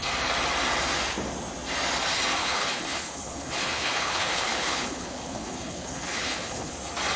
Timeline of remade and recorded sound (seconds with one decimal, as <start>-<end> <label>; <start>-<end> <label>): 0.0-2.4 recorded; 2.4-6.7 remade; 6.7-7.2 recorded